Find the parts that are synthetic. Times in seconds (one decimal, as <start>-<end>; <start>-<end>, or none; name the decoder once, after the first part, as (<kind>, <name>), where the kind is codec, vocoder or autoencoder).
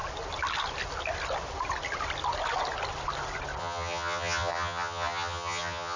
3.6-6.0 (vocoder, HiFi-GAN)